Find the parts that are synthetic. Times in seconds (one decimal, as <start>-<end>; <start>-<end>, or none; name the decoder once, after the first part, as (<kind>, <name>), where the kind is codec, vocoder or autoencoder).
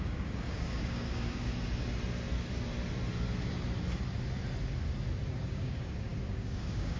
0.0-1.5 (codec, DAC); 5.3-7.0